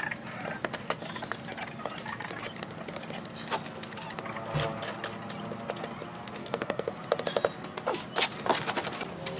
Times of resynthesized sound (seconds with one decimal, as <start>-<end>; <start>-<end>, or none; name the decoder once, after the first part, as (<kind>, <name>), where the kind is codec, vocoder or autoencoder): 6.4-6.9 (codec, SNAC)